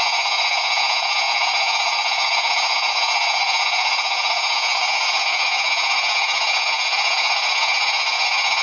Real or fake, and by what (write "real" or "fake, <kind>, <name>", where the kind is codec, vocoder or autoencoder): fake, vocoder, Vocos